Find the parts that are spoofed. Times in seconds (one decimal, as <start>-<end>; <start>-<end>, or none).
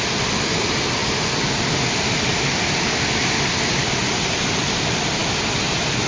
none